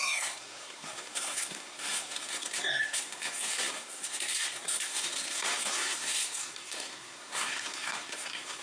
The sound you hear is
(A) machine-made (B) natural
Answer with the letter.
A